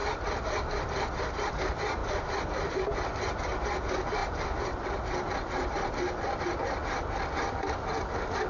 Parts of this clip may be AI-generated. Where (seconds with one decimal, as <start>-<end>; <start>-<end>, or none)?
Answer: none